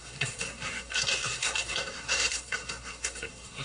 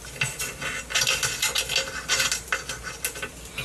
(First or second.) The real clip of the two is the second